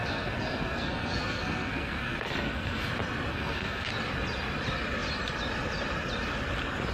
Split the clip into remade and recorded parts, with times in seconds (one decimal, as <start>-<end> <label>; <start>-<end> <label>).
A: 0.0-2.9 remade; 2.9-3.3 recorded; 3.3-3.9 remade; 3.9-6.9 recorded